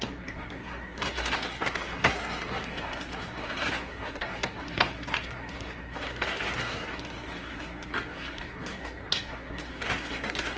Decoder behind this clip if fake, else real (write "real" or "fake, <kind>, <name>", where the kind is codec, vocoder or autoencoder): fake, codec, SNAC